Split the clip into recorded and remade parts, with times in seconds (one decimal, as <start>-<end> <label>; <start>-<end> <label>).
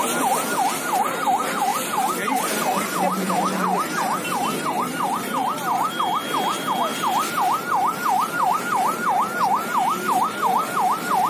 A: 0.0-1.7 recorded; 1.7-5.9 remade; 5.9-6.9 recorded; 6.9-8.5 remade; 8.5-11.3 recorded